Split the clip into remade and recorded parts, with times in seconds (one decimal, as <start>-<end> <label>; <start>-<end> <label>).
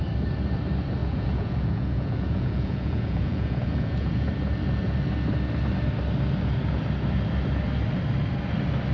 0.0-1.0 recorded; 1.0-4.3 remade; 4.3-8.9 recorded